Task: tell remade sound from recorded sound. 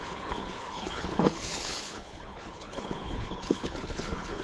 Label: remade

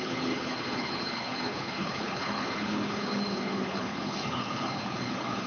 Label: remade